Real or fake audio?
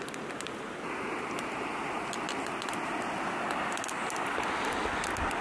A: real